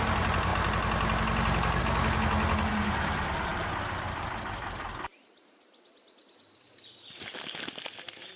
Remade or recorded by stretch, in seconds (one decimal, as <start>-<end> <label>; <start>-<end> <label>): 0.0-8.4 recorded